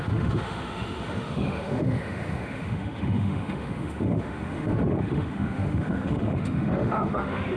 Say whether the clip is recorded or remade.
remade